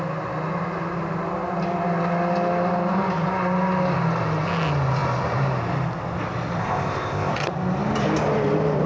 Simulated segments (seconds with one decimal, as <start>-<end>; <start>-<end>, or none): 6.6-7.3